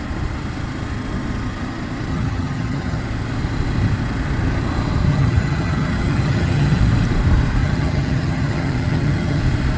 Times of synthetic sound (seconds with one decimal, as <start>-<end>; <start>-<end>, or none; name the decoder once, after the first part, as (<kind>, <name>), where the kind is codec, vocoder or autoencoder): 2.1-3.0 (vocoder, HiFi-GAN); 5.1-6.8; 7.6-9.4